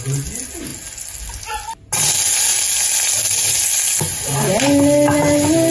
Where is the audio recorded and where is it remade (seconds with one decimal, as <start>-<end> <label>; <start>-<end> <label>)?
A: 0.0-5.7 recorded